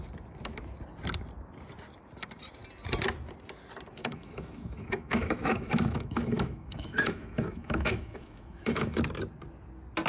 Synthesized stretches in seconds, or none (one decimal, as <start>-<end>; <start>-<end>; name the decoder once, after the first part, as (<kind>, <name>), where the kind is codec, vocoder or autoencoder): 4.0-9.0 (autoencoder, DAC-VAE)